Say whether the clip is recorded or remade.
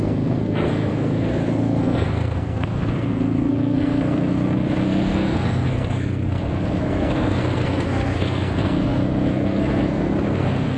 remade